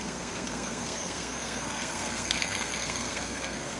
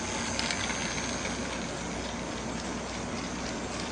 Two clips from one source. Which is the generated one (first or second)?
first